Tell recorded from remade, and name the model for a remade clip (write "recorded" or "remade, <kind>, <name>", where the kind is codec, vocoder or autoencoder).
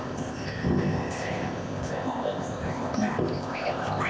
remade, codec, ZipCodec